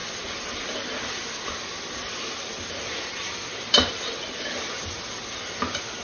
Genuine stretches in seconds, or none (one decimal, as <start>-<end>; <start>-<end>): 0.0-6.0